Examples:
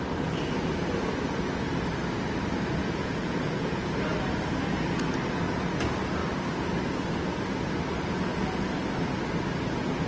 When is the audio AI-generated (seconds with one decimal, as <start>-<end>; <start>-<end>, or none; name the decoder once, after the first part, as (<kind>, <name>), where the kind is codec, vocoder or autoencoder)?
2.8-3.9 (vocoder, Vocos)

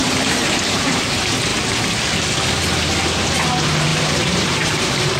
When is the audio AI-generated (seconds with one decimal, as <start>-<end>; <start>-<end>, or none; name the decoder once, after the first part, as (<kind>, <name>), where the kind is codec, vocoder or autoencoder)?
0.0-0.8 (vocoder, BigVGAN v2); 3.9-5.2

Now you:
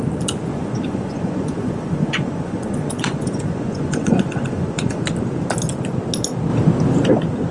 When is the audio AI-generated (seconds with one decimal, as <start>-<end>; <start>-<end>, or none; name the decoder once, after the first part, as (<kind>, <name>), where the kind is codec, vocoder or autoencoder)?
0.5-5.0 (vocoder, Vocos)

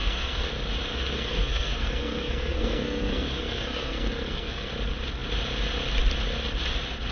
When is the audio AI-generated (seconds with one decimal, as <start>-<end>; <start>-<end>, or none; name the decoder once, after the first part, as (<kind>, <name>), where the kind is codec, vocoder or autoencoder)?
0.0-0.5 (codec, SNAC); 0.9-4.7